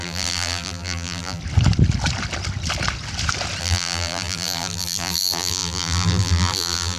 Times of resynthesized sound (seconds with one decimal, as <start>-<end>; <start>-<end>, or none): 0.0-1.4; 3.6-7.0